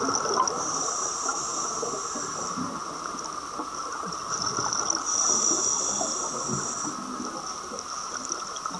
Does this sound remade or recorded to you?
recorded